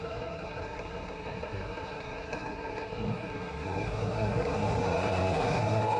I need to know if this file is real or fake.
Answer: fake